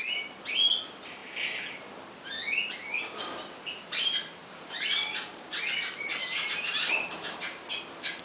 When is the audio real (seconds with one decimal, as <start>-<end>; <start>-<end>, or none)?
0.0-2.4; 7.3-8.2